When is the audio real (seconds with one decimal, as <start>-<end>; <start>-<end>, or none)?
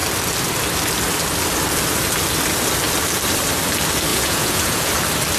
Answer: 0.0-4.1; 4.9-5.4